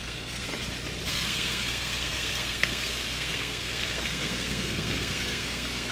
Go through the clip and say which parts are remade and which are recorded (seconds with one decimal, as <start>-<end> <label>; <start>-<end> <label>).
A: 0.0-0.5 remade; 0.5-1.1 recorded; 1.1-5.9 remade